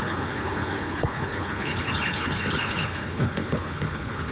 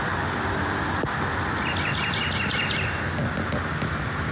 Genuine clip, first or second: second